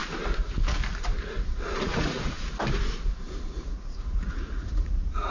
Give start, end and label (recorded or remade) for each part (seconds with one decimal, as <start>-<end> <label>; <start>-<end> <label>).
0.0-1.2 recorded; 1.2-2.6 remade; 2.6-3.2 recorded; 3.2-5.3 remade